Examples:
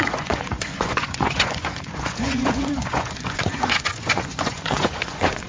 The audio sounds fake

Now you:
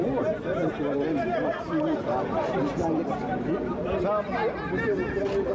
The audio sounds real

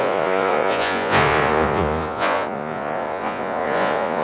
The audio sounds fake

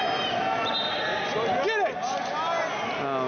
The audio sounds real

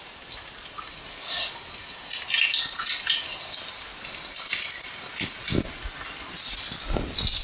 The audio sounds real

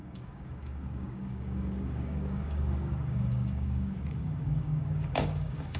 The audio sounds fake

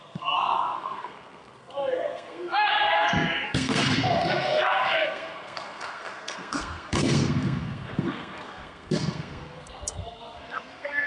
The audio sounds fake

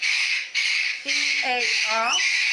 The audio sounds fake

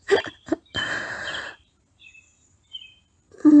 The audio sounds fake